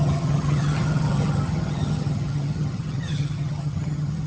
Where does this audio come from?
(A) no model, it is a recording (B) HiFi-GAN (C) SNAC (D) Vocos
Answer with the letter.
B